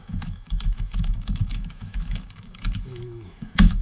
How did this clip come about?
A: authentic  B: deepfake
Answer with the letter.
B